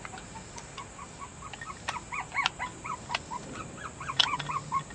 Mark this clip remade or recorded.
recorded